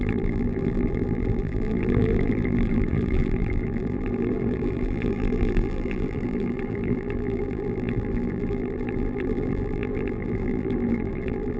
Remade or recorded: remade